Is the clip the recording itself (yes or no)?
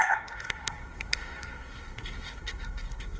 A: no